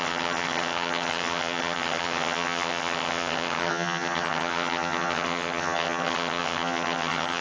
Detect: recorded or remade remade